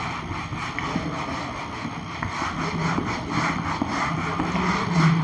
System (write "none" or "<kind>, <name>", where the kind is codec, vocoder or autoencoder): none